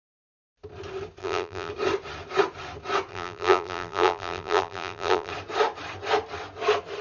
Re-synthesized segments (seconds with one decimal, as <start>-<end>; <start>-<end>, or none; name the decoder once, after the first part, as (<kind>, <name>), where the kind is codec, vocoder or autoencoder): 1.2-1.7 (vocoder, BigVGAN v2); 3.1-5.3